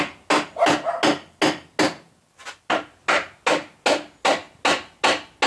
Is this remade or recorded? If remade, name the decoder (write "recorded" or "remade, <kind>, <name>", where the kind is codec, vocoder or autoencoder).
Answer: recorded